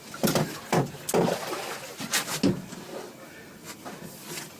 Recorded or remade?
recorded